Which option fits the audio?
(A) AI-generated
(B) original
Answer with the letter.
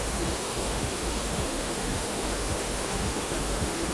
A